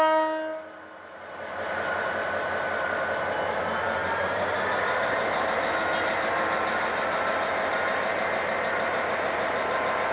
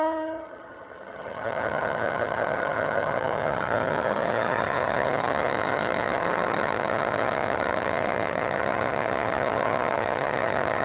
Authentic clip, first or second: first